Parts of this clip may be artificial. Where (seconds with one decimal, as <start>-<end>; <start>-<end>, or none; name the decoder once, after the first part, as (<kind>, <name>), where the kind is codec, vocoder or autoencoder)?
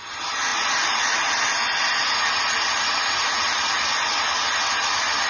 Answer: none